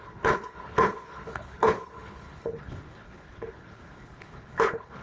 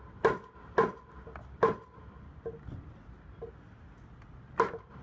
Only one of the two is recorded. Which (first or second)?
second